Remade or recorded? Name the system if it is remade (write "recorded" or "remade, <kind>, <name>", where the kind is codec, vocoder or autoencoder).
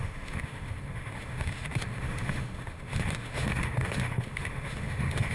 remade, autoencoder, DAC-VAE